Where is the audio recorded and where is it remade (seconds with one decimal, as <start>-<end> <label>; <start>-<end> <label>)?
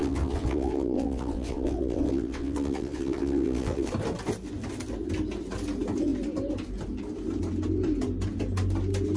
0.0-3.9 remade; 3.9-9.2 recorded